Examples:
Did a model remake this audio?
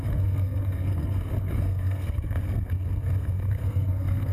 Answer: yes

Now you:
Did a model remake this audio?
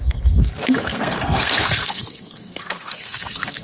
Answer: yes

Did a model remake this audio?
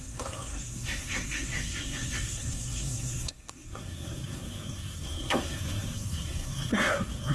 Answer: yes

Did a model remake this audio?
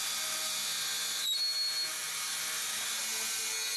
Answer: no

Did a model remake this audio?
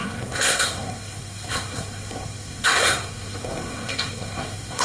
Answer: yes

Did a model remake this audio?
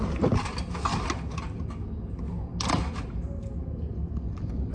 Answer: no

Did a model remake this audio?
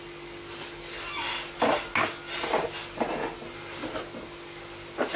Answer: no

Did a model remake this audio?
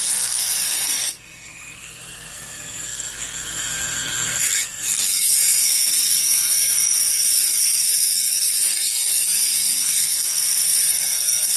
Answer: yes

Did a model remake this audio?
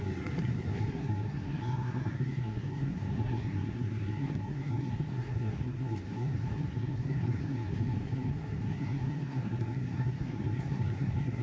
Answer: yes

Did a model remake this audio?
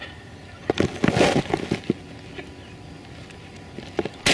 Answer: no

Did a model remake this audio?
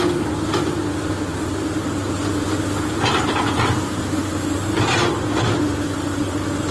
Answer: no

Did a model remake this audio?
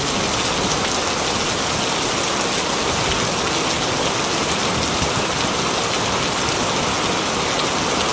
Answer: no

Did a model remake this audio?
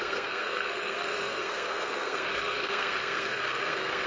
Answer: yes